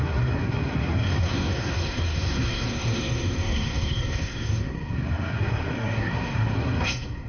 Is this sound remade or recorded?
remade